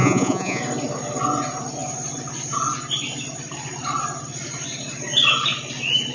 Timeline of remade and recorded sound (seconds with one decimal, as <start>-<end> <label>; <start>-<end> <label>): 0.0-0.6 remade; 0.6-6.1 recorded